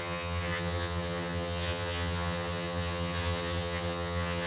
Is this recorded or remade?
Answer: remade